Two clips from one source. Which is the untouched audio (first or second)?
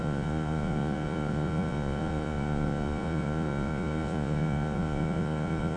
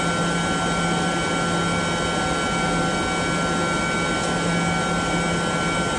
second